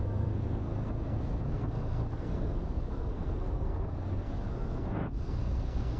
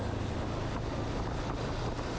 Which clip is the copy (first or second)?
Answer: first